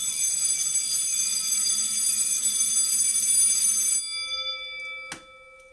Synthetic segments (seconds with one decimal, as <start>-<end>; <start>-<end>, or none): none